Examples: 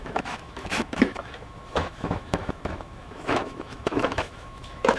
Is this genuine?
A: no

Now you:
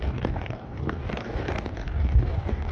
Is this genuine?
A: no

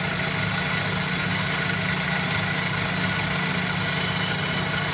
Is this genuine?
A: yes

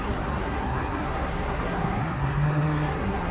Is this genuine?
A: no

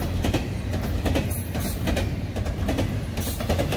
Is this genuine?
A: yes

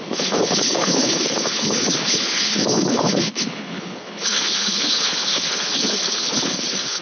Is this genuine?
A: no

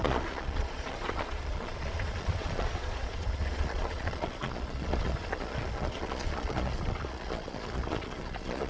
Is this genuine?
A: no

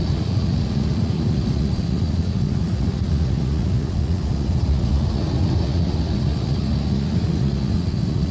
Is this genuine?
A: no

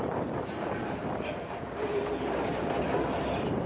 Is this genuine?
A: no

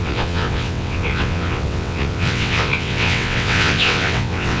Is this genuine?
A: no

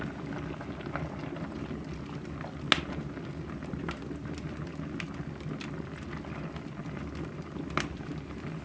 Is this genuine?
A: yes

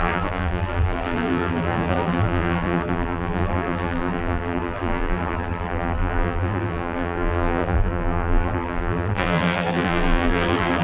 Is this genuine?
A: no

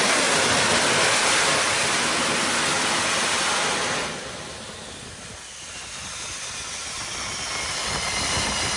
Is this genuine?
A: yes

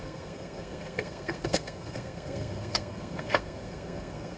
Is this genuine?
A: no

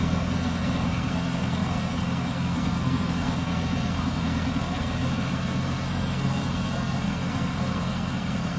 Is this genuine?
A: no